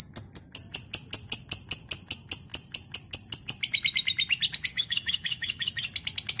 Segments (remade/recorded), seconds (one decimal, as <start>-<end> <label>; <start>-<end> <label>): 0.0-4.7 recorded; 4.7-5.7 remade; 5.7-6.4 recorded